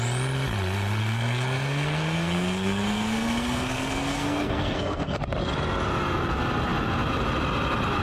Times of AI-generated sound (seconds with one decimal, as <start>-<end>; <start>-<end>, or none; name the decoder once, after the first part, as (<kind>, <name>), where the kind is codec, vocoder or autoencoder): 1.0-5.2 (codec, SNAC)